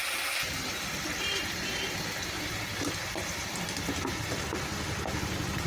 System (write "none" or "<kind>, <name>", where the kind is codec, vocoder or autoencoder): none